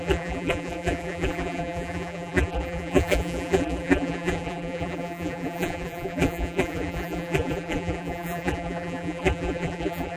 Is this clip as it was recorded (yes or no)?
no